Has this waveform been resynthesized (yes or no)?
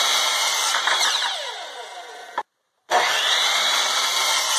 yes